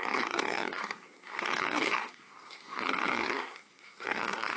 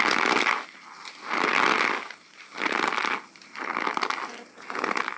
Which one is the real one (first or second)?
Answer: second